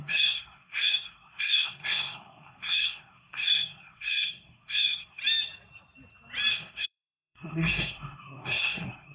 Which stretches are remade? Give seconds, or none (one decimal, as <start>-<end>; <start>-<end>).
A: 0.0-5.2; 6.5-9.1